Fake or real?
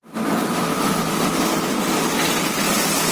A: real